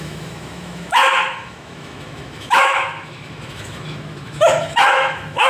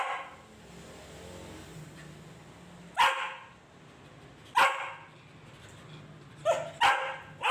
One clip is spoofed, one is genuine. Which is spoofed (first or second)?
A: first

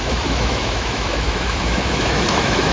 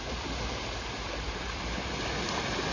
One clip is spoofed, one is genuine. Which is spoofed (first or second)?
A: first